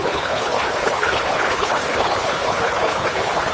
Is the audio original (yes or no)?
no